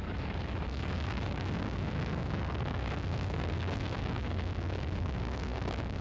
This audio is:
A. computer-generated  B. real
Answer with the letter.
A